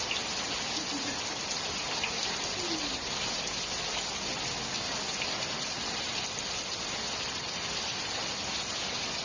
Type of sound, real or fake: real